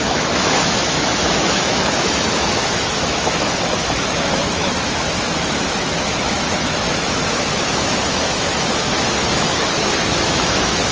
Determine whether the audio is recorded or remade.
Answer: remade